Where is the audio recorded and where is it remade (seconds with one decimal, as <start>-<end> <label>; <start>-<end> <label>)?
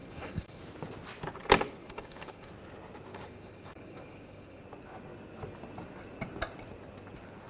0.0-0.6 remade; 0.6-1.8 recorded; 1.8-2.5 remade; 2.5-3.1 recorded; 3.1-4.6 remade; 4.6-7.5 recorded